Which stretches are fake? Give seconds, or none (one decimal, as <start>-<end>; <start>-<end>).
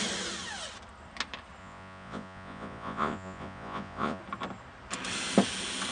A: 1.6-4.2